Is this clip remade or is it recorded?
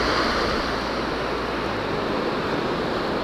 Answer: recorded